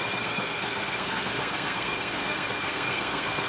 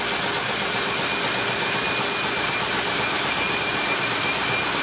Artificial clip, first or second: first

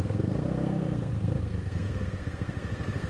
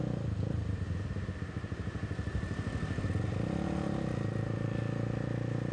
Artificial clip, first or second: first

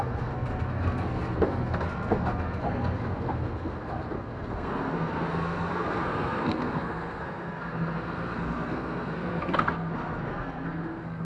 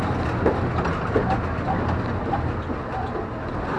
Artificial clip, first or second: first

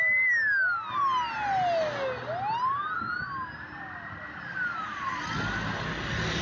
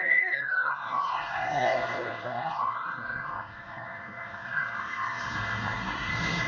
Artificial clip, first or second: second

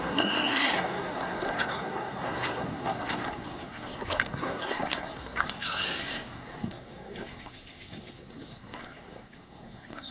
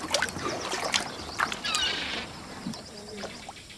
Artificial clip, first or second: first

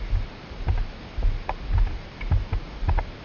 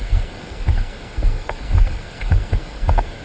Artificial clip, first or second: second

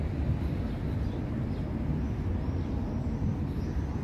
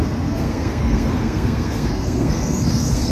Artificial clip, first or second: second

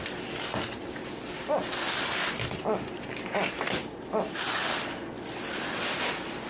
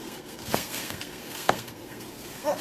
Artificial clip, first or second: second